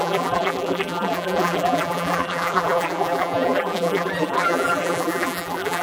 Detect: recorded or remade remade